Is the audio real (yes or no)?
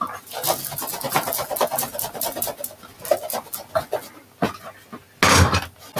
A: yes